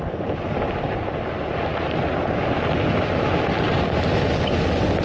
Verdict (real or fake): real